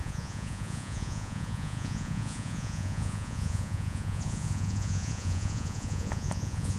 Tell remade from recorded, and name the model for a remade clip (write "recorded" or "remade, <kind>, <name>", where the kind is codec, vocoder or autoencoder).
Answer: remade, vocoder, Vocos